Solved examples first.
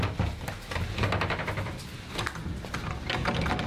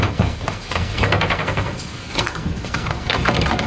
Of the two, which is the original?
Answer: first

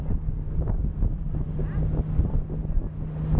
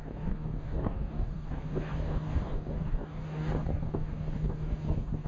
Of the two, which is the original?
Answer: first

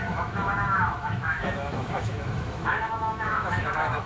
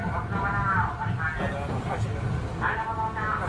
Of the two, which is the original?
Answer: second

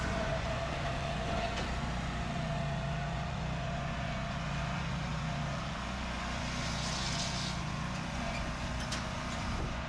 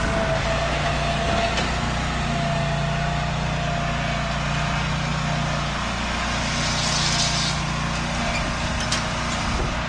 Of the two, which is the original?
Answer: second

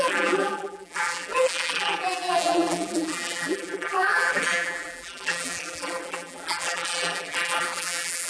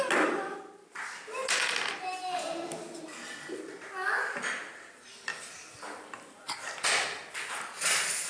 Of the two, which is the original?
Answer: second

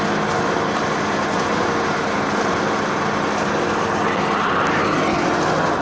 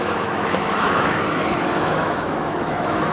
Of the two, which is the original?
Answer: first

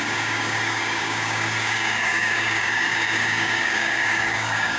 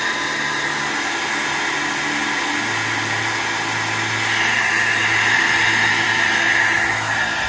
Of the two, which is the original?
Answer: second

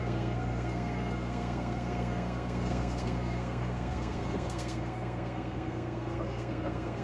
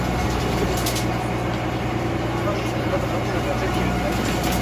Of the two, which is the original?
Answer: second